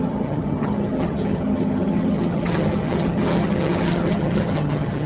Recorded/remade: remade